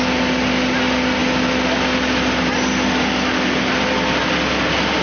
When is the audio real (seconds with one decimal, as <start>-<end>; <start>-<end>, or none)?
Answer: 0.0-5.0